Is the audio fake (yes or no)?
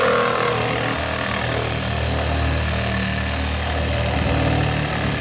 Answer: no